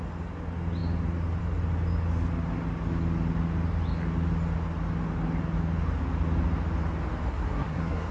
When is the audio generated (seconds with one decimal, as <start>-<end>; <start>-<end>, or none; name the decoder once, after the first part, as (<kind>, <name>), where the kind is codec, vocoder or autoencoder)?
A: 7.3-8.1 (codec, SNAC)